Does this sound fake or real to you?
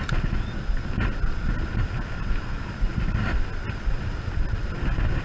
real